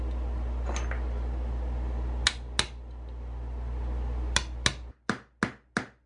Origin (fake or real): real